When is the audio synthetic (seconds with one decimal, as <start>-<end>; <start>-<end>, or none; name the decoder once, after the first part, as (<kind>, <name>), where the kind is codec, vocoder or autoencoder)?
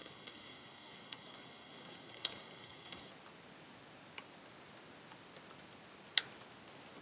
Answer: 0.0-3.1 (codec, SNAC)